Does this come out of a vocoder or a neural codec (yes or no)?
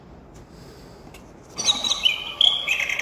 no